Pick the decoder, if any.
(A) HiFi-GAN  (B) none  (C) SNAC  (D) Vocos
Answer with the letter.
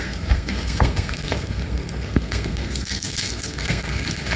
C